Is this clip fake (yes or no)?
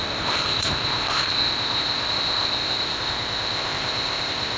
yes